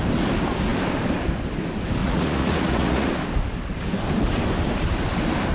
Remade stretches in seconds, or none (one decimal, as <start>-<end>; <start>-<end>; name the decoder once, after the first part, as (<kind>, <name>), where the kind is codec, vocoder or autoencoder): 2.0-3.1 (vocoder, Vocos)